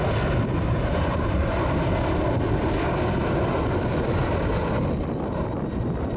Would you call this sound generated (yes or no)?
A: no